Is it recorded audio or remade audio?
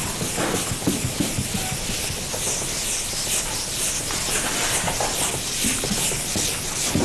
recorded